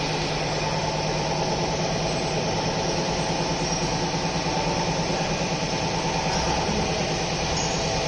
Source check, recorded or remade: recorded